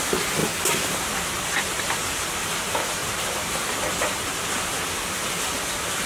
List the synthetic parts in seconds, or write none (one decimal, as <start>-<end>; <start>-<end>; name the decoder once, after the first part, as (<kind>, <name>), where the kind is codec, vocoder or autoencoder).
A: none